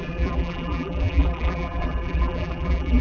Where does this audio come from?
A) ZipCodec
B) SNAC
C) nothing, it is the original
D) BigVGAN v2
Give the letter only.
D